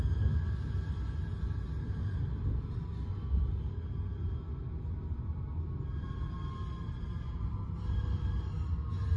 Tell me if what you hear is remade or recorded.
recorded